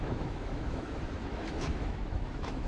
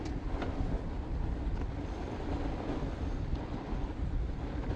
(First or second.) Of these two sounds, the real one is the second